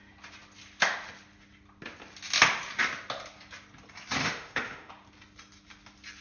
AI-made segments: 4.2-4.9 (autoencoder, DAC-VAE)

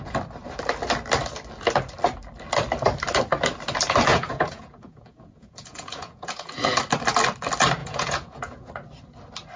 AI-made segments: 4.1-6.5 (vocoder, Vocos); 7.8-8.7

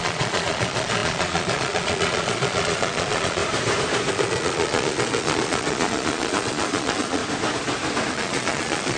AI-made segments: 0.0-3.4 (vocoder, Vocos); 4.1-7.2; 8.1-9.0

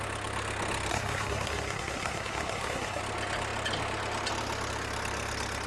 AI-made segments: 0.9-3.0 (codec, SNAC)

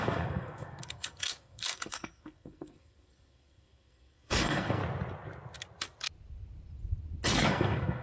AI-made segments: 0.0-4.8 (codec, SNAC); 7.5-8.0